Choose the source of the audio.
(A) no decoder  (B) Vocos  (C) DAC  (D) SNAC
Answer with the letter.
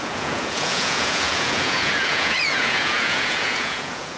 B